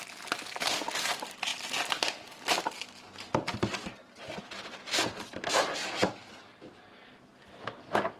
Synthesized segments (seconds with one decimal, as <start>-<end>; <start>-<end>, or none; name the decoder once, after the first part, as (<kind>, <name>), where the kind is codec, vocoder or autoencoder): none